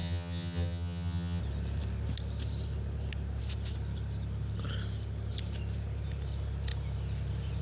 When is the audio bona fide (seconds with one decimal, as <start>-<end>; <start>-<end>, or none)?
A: 1.4-7.6